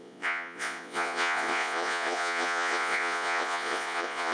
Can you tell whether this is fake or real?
fake